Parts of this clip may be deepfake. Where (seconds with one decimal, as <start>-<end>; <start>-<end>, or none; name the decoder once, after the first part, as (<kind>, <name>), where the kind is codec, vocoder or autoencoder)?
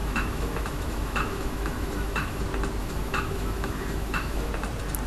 0.0-2.4 (autoencoder, DAC-VAE); 2.8-4.5